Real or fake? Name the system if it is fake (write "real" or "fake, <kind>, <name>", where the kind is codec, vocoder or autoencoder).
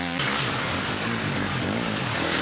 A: fake, codec, DAC